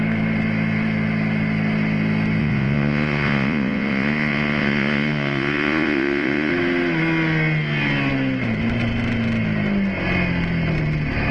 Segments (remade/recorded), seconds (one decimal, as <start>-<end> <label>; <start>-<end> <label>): 0.0-2.4 recorded; 2.4-6.5 remade; 6.5-11.3 recorded